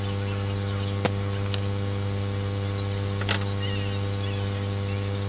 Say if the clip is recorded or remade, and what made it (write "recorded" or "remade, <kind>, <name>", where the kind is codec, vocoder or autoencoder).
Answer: recorded